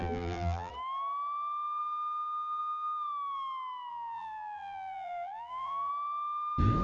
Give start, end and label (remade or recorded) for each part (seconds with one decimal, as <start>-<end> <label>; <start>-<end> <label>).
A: 0.0-0.7 remade; 0.7-3.9 recorded; 3.9-5.9 remade; 5.9-6.8 recorded